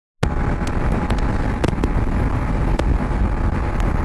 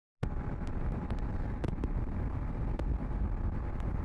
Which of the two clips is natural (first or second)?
first